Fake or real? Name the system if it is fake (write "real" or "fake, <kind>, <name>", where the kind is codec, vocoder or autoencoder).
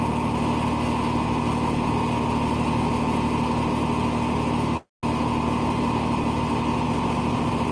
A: real